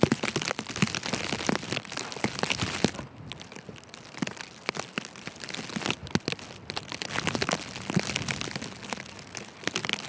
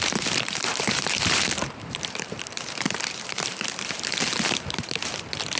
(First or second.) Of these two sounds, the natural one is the first